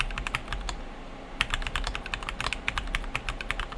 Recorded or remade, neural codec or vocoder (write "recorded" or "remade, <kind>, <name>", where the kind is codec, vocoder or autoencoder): recorded